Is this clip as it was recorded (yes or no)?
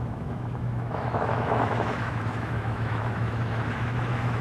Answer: no